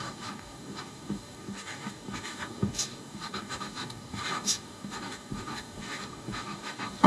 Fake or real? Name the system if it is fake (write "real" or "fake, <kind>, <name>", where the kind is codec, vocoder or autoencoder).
fake, codec, DAC